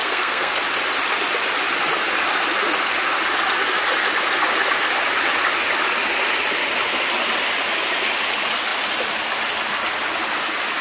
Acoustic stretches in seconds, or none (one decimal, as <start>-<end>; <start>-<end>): 0.6-10.8